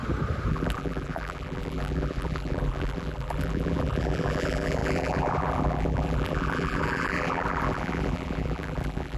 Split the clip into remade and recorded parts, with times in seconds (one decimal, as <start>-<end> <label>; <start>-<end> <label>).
0.0-0.5 recorded; 0.5-9.2 remade